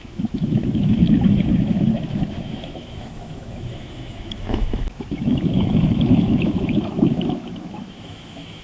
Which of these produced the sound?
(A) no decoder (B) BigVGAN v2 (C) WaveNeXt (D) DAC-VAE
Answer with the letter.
D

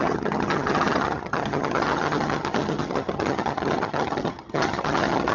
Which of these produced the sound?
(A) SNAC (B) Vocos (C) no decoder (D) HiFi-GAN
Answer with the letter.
D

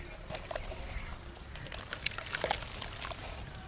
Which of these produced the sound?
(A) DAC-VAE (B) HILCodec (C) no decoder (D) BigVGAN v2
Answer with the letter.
C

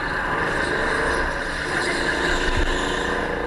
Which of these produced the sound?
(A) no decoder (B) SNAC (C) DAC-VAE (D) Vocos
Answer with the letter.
A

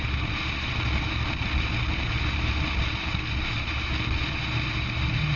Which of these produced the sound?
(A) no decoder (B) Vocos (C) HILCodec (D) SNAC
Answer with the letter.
A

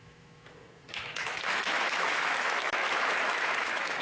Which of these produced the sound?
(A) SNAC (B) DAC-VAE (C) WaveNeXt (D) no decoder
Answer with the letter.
B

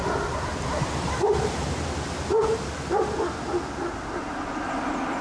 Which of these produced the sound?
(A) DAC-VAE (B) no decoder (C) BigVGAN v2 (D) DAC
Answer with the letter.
B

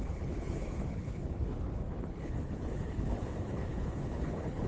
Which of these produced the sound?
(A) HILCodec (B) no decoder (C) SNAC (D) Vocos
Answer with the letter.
A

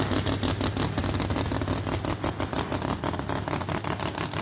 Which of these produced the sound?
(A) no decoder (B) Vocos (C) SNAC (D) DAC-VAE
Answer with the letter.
A